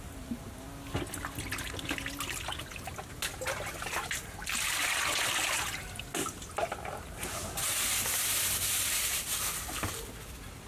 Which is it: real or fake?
real